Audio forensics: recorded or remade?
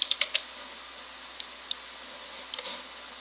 recorded